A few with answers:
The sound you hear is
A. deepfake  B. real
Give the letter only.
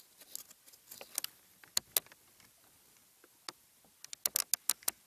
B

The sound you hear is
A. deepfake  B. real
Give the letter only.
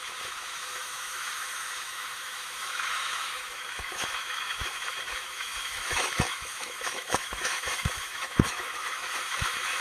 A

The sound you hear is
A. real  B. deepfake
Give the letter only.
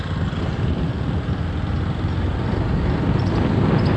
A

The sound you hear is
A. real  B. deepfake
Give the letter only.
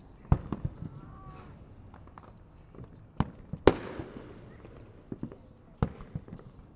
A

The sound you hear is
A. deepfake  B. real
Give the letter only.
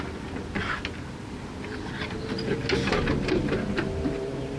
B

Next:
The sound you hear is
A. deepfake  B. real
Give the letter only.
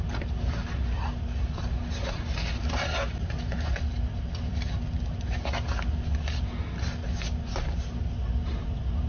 B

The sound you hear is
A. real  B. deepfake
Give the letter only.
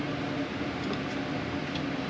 A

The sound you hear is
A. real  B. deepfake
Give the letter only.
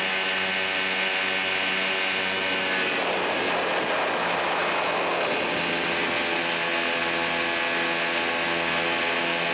A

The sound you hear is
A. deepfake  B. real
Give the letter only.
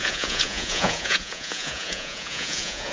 A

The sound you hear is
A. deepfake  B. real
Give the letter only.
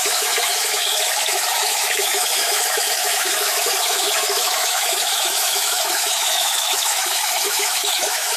A